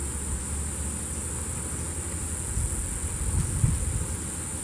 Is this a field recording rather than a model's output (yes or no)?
yes